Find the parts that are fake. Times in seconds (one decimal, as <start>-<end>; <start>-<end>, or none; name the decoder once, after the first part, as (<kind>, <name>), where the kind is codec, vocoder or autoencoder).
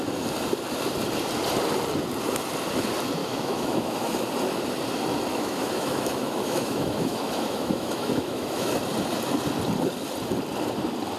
3.2-4.1 (autoencoder, DAC-VAE); 5.3-8.7